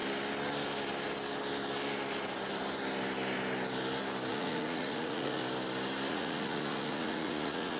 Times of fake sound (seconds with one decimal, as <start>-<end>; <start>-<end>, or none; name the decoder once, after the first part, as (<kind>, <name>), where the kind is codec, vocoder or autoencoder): 4.3-5.4 (vocoder, Vocos); 6.1-7.8